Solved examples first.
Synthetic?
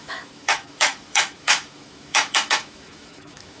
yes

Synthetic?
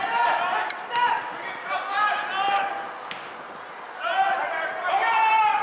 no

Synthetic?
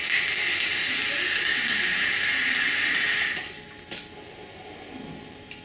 no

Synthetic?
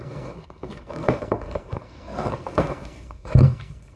yes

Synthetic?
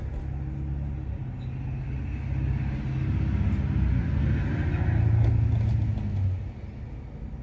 no